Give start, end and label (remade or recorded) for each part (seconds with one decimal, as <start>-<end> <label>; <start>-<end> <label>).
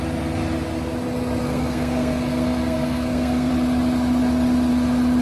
0.0-1.4 recorded; 1.4-3.5 remade; 3.5-5.2 recorded